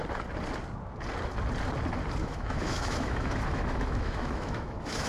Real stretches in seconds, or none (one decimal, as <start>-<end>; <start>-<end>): 0.0-2.2